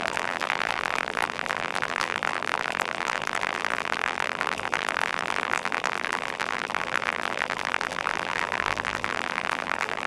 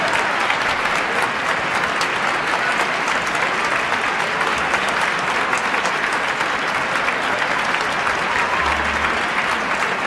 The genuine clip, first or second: second